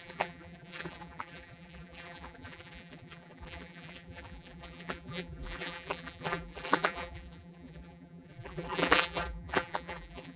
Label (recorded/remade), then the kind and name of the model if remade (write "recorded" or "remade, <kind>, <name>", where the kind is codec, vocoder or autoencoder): remade, vocoder, BigVGAN v2